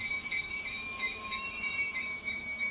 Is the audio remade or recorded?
remade